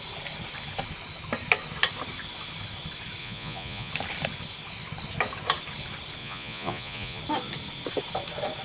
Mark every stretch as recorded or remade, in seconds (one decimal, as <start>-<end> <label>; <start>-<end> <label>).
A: 0.0-3.2 recorded; 3.2-3.9 remade; 3.9-6.2 recorded; 6.2-7.2 remade; 7.2-8.6 recorded